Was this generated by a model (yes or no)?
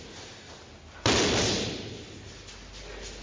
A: no